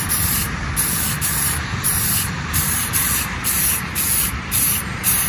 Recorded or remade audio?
remade